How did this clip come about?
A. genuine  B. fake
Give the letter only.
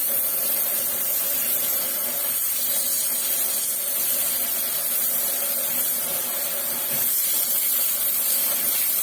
A